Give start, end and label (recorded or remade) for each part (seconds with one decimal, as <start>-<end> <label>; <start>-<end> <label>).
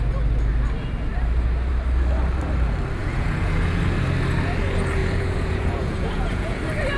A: 0.0-3.0 recorded; 3.0-3.8 remade; 3.8-5.0 recorded; 5.0-6.6 remade; 6.6-7.0 recorded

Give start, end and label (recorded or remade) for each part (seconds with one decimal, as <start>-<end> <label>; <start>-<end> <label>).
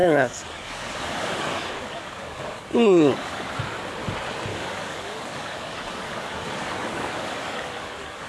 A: 0.0-3.5 remade; 3.5-4.5 recorded; 4.5-8.3 remade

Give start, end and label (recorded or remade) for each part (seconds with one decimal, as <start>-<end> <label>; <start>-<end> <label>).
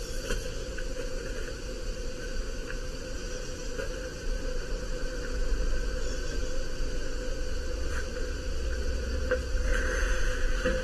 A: 0.0-6.4 remade; 6.4-7.8 recorded; 7.8-9.7 remade; 9.7-10.2 recorded; 10.2-10.8 remade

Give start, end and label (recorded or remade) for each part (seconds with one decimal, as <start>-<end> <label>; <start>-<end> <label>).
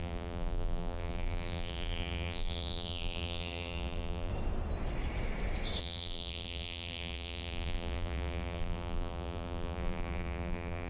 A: 0.0-4.3 remade; 4.3-5.8 recorded; 5.8-10.9 remade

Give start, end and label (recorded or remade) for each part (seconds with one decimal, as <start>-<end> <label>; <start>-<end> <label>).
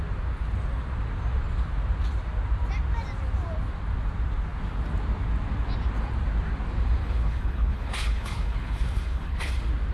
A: 0.0-7.0 recorded; 7.0-9.5 remade; 9.5-9.9 recorded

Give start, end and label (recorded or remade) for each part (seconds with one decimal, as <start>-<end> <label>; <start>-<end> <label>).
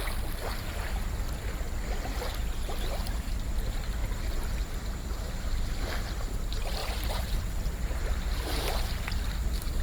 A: 0.0-3.0 recorded; 3.0-3.5 remade; 3.5-6.8 recorded; 6.8-8.3 remade; 8.3-9.8 recorded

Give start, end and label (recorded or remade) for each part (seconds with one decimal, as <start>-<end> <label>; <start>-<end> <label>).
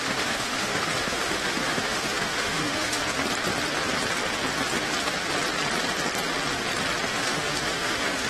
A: 0.0-3.0 remade; 3.0-7.1 recorded; 7.1-8.3 remade